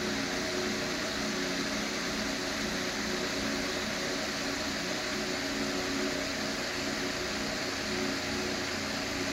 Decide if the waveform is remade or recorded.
recorded